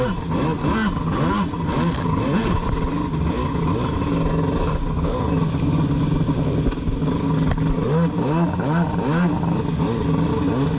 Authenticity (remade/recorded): recorded